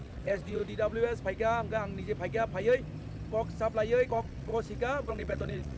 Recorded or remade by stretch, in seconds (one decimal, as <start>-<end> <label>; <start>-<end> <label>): 0.0-0.6 remade; 0.6-4.1 recorded; 4.1-4.5 remade; 4.5-5.1 recorded; 5.1-5.8 remade